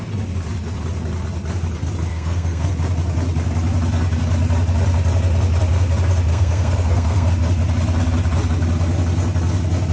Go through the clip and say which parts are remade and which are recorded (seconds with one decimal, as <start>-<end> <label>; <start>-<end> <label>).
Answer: 0.0-2.1 recorded; 2.1-2.7 remade; 2.7-6.3 recorded; 6.3-7.3 remade; 7.3-9.9 recorded